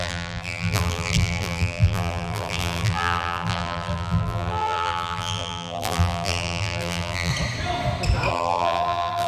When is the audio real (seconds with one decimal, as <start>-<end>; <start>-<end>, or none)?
7.3-8.3